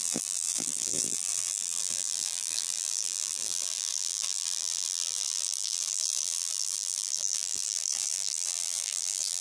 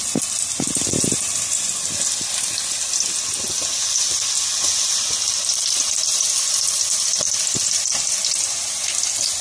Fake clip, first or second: first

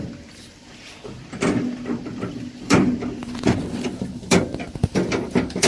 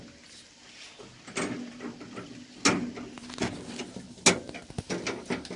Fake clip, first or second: first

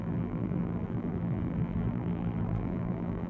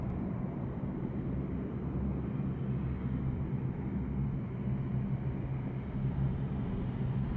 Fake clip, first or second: first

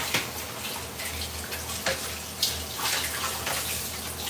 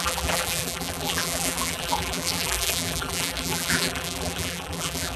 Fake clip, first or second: second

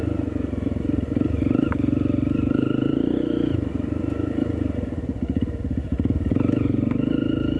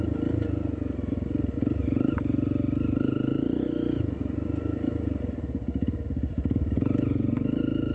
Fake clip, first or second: first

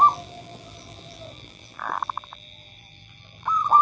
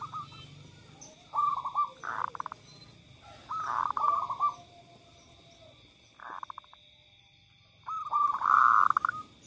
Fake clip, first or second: first